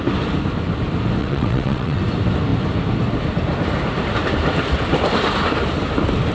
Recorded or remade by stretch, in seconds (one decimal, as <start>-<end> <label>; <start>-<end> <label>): 0.0-1.2 recorded; 1.2-2.0 remade; 2.0-6.3 recorded